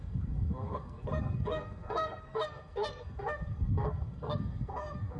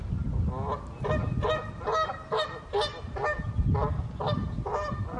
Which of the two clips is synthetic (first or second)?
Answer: first